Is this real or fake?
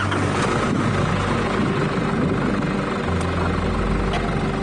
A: real